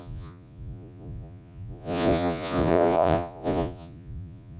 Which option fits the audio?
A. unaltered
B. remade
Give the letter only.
B